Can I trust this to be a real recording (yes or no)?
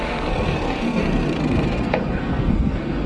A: no